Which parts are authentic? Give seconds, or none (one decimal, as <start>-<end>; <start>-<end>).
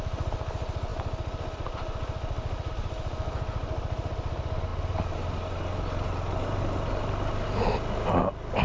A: 0.0-8.6